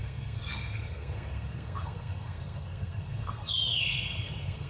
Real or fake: fake